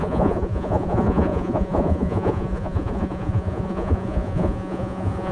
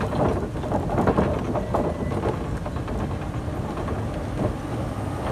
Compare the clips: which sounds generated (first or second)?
first